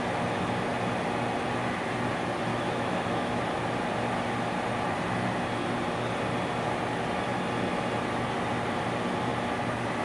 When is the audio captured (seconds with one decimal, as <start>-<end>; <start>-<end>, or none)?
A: 0.0-2.5; 3.4-10.0